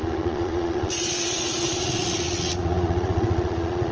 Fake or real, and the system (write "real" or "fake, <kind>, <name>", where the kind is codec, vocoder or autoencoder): fake, vocoder, Vocos